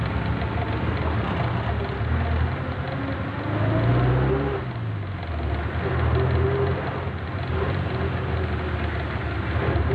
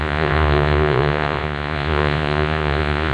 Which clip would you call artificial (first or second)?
second